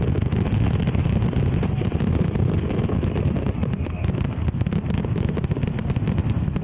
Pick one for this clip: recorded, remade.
recorded